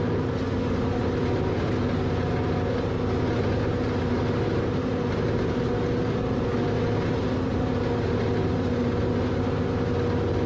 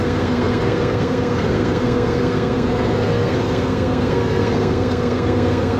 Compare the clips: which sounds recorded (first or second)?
first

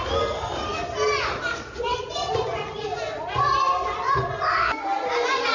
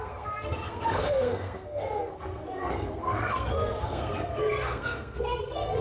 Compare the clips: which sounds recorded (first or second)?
first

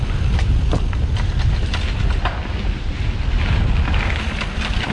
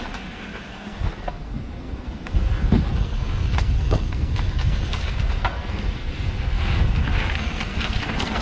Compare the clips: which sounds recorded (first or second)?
first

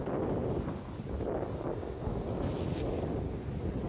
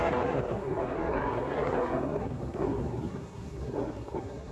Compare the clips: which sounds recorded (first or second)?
first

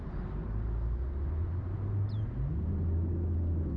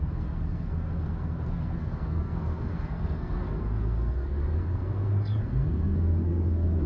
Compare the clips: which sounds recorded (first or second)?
first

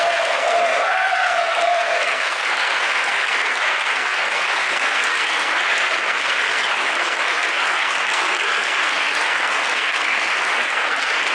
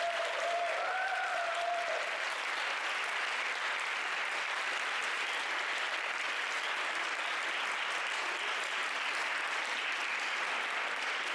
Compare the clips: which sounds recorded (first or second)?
second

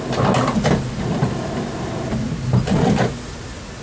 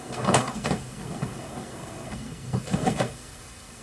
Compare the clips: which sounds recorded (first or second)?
first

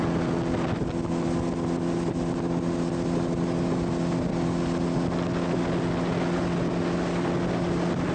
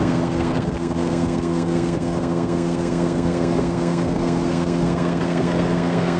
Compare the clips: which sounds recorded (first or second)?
first